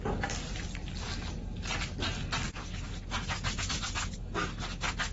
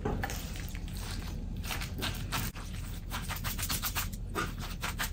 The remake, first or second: second